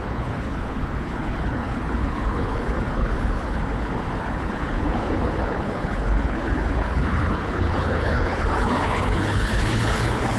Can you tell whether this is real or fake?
fake